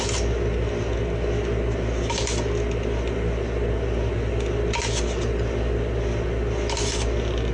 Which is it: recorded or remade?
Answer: recorded